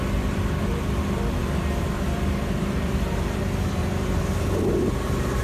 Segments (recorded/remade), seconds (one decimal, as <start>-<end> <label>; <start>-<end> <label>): 0.0-3.8 remade; 3.8-5.4 recorded